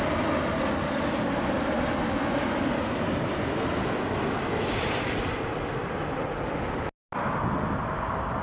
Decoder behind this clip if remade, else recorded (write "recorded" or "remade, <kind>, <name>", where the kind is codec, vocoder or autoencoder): recorded